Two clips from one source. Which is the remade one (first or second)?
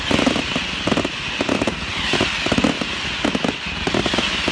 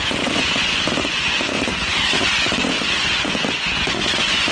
second